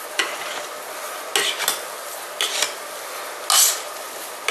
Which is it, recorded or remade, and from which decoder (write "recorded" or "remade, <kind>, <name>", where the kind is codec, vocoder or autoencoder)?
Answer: recorded